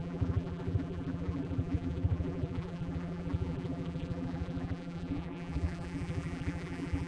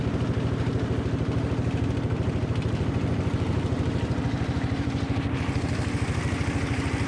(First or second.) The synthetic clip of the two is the first